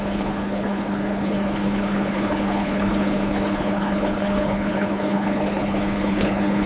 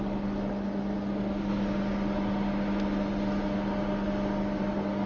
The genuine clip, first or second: second